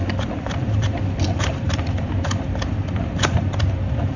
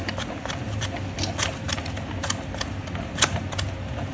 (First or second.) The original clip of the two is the second